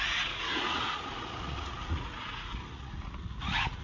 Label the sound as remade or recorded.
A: remade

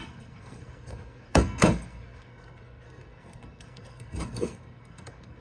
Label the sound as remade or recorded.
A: remade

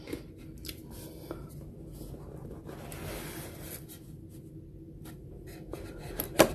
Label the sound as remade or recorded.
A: recorded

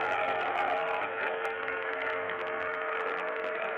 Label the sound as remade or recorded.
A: remade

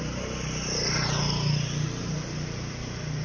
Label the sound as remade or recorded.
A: recorded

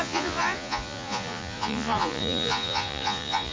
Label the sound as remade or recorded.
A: remade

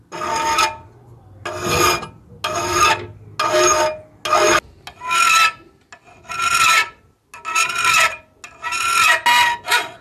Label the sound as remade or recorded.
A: recorded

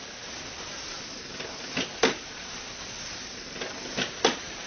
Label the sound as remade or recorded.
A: recorded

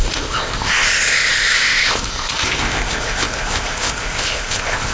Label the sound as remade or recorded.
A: remade